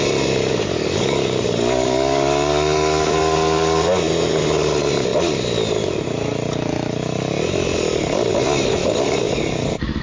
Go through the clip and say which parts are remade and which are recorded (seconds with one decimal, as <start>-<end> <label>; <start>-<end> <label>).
0.0-0.5 recorded; 0.5-3.9 remade; 3.9-8.8 recorded; 8.8-9.3 remade; 9.3-10.0 recorded